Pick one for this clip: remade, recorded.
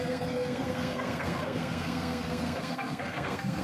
remade